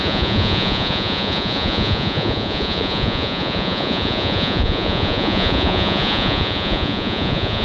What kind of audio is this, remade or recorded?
remade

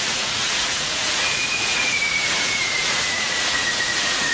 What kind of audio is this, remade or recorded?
remade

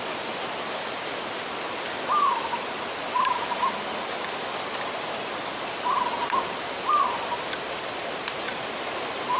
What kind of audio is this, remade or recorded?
recorded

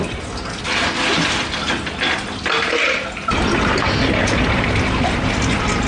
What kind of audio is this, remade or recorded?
recorded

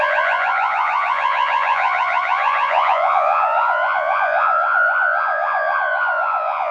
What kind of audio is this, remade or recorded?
remade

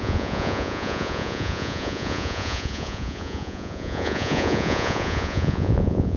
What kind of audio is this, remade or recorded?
remade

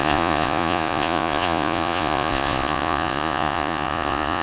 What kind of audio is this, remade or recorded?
remade